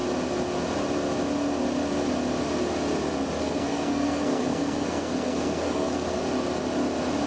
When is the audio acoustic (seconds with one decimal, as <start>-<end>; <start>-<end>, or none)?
0.0-3.4; 6.2-7.3